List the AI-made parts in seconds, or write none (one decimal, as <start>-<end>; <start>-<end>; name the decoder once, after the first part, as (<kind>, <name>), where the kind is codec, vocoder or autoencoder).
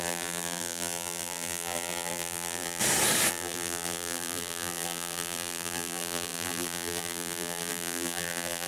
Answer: 0.0-2.8 (vocoder, BigVGAN v2); 3.3-8.7